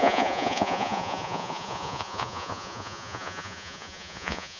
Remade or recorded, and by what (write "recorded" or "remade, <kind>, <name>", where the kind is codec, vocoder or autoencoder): remade, vocoder, Vocos